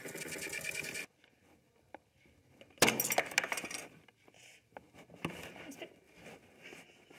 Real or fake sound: real